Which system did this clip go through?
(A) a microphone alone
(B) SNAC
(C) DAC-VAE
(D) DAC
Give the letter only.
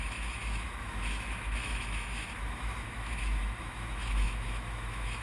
C